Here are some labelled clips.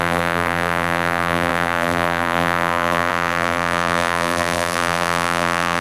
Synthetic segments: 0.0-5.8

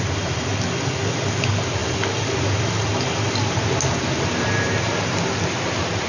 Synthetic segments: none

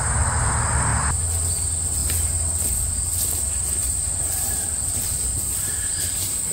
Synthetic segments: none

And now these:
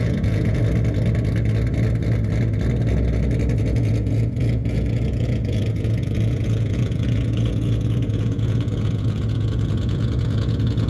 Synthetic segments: 0.0-0.6; 3.6-10.9